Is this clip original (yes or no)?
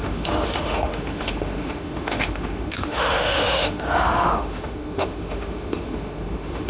no